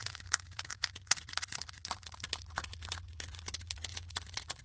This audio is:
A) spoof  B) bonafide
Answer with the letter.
A